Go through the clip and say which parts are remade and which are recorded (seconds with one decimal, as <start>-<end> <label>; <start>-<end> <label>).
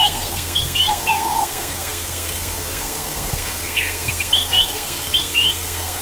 0.0-6.0 remade